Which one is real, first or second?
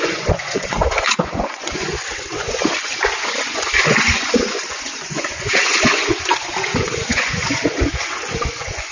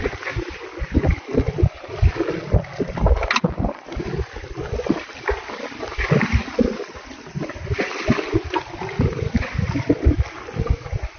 second